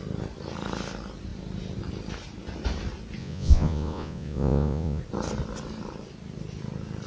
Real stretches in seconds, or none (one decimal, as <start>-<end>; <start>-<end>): 0.0-3.2; 5.0-7.1